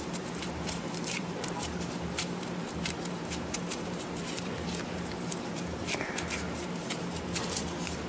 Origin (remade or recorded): remade